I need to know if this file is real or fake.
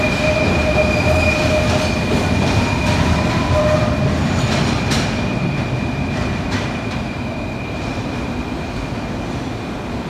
real